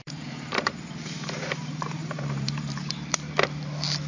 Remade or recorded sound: remade